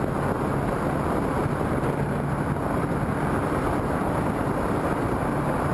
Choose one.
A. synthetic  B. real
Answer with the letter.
B